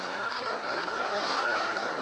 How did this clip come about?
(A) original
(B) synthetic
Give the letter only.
B